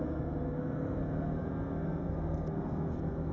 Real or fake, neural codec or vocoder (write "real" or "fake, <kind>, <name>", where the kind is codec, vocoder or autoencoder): fake, codec, SNAC